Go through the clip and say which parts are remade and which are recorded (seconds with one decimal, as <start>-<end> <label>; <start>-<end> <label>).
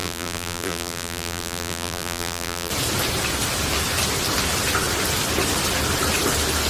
0.0-2.7 remade; 2.7-6.7 recorded